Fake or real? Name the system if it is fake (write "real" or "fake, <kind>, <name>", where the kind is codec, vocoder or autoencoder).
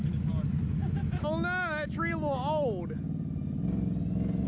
real